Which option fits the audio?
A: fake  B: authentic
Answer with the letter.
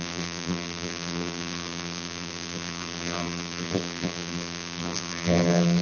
A